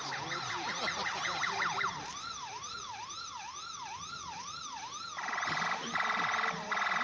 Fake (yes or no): no